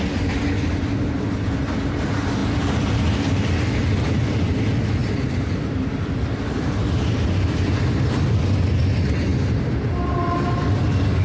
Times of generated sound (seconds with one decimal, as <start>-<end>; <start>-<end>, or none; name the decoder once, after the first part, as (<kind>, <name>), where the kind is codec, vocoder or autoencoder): 5.0-6.8 (vocoder, BigVGAN v2)